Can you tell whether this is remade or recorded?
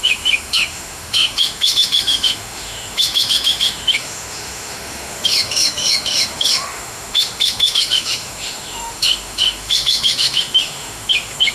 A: remade